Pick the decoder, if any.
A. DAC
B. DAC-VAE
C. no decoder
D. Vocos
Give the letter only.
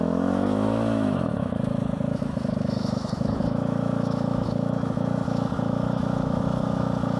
B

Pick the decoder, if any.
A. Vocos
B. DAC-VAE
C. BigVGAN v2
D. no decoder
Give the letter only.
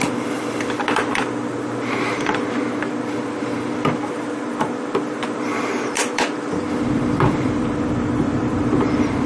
C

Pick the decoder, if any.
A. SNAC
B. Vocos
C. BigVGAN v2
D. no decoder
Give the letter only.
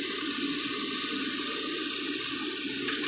D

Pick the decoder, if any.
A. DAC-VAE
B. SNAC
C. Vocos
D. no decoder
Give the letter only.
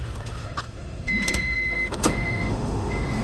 A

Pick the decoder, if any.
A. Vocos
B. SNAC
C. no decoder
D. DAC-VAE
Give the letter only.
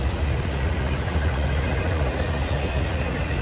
A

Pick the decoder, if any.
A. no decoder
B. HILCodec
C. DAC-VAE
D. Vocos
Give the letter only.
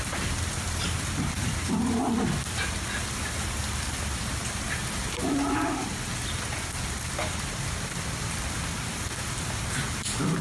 A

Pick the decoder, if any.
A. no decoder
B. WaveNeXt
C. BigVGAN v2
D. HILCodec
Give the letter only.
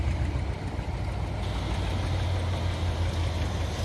A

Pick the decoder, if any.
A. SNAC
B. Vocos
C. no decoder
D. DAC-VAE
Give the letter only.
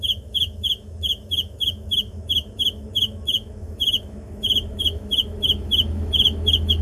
D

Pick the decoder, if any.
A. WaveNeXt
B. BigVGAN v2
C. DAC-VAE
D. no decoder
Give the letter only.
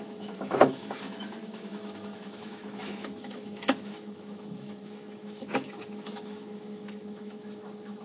C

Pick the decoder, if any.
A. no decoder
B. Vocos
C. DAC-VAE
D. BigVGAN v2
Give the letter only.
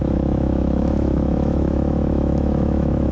C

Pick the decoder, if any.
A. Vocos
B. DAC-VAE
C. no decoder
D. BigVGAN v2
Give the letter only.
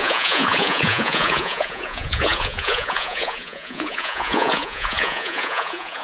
A